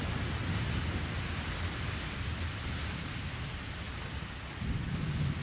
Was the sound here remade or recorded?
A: recorded